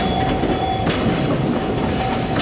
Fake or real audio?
real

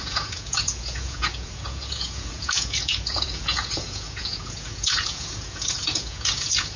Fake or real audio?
fake